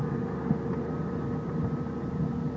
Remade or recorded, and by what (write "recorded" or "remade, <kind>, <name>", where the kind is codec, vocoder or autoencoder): recorded